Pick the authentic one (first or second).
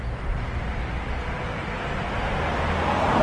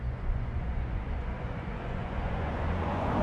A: first